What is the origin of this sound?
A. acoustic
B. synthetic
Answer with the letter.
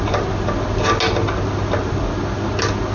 A